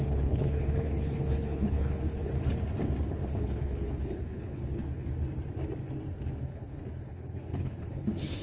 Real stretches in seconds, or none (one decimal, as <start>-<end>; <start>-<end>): 2.3-3.1; 5.1-6.5